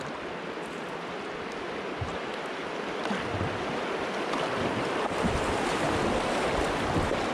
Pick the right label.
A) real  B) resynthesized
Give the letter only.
A